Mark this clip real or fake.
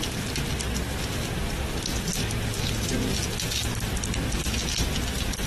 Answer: real